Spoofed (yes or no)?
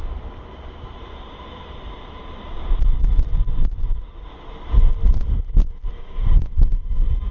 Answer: no